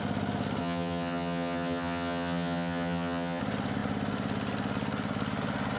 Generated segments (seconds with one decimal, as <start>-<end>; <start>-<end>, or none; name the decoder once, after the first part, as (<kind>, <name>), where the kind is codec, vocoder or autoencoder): 0.6-3.4 (vocoder, HiFi-GAN)

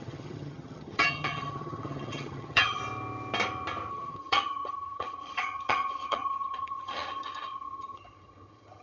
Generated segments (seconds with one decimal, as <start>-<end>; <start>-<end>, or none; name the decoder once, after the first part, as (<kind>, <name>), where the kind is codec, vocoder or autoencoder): 0.0-2.8 (vocoder, HiFi-GAN); 3.9-8.8

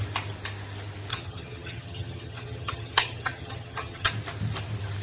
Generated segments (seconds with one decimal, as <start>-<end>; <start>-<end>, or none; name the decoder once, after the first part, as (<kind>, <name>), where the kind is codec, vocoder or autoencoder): 1.1-4.1 (vocoder, HiFi-GAN)

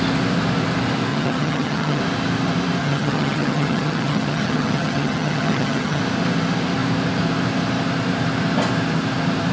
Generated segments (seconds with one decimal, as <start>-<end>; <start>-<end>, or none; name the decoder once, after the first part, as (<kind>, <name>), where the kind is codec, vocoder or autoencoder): 1.1-2.0 (vocoder, HiFi-GAN); 2.8-6.0

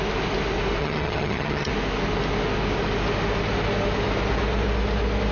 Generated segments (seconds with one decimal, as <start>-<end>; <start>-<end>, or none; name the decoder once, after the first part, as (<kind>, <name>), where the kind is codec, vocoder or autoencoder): 0.8-1.7 (vocoder, HiFi-GAN)